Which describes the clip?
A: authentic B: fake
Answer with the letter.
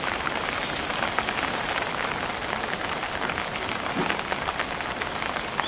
A